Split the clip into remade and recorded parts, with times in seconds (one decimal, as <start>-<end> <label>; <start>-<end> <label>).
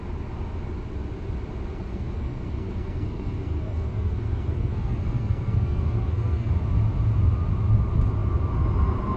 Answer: 0.0-1.7 recorded; 1.7-6.5 remade; 6.5-9.2 recorded